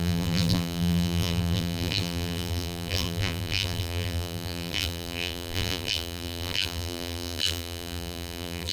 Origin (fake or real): fake